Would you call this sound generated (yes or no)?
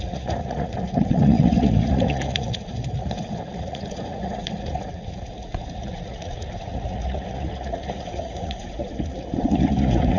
yes